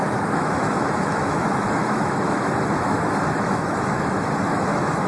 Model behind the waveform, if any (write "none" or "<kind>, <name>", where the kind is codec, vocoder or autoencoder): autoencoder, DAC-VAE